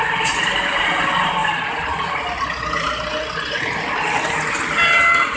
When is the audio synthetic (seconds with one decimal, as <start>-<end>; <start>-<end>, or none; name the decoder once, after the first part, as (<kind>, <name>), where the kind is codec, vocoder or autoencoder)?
none